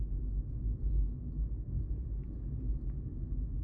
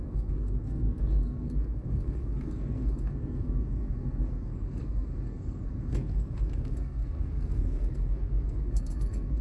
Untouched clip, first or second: first